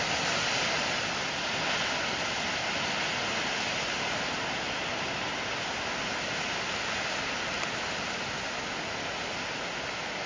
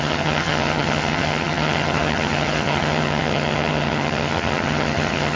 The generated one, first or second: second